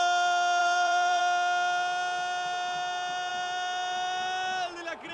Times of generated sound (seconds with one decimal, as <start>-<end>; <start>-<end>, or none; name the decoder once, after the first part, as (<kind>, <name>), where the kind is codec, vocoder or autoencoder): 0.6-1.2 (vocoder, BigVGAN v2)